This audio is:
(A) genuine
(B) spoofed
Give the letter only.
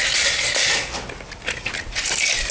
A